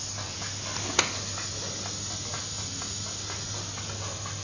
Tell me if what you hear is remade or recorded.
recorded